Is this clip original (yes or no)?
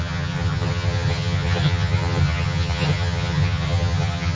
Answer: no